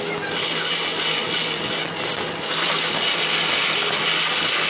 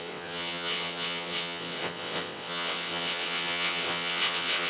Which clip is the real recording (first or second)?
first